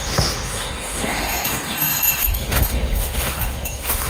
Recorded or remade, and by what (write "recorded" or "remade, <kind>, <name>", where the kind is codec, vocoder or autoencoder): remade, autoencoder, DAC-VAE